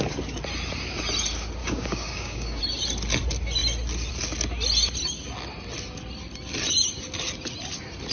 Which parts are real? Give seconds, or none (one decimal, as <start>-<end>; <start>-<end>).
0.0-1.6; 2.6-8.1